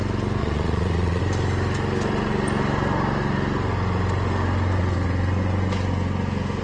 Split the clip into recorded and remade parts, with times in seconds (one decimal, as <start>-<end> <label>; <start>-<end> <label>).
0.0-0.4 recorded; 0.4-1.2 remade; 1.2-6.6 recorded